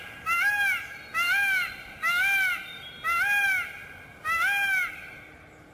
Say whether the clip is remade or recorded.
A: recorded